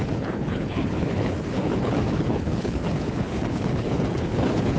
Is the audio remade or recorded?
remade